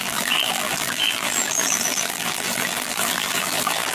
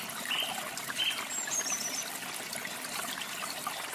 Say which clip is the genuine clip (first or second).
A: second